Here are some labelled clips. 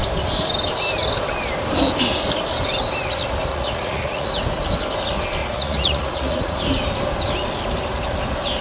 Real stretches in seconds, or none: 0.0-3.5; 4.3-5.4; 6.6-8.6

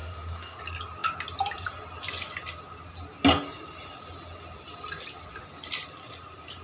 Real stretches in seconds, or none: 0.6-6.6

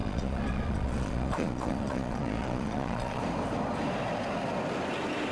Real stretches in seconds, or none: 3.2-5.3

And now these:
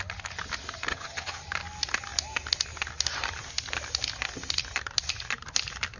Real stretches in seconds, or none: 0.0-0.9; 1.4-6.0